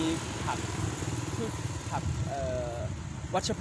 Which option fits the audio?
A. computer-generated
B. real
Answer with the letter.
B